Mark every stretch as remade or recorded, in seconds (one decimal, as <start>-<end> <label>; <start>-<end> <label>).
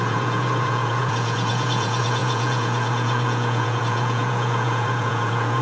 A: 0.0-5.6 remade